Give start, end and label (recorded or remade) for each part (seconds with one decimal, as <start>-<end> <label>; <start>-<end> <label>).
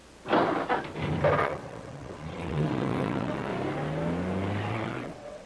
0.0-1.4 recorded; 1.4-3.5 remade; 3.5-4.7 recorded; 4.7-5.5 remade